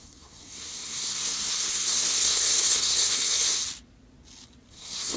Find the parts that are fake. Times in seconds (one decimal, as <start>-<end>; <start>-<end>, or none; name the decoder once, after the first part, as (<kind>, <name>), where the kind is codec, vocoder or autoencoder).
0.0-3.6 (codec, SNAC); 4.7-5.2